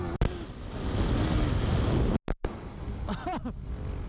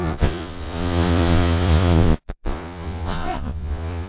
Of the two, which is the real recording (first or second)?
first